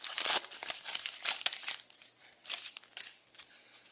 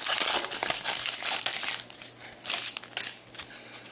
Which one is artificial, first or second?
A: first